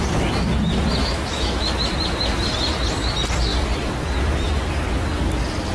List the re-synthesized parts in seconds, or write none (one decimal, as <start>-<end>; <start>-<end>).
1.0-1.7